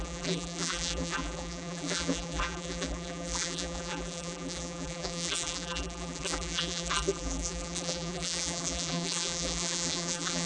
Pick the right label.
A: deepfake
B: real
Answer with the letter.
A